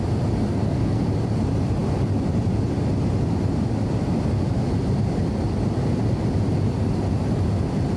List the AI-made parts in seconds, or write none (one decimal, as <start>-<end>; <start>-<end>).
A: 0.5-1.0